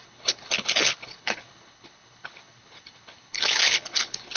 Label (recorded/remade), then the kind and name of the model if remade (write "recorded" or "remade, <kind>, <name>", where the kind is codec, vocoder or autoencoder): remade, codec, HILCodec